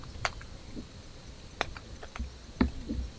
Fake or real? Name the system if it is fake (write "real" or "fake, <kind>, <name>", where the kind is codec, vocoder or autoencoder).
real